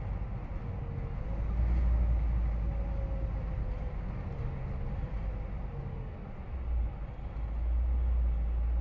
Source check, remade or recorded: recorded